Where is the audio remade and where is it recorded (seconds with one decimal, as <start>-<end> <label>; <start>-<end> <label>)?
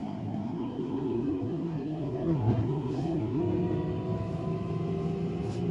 0.0-3.4 remade; 3.4-5.7 recorded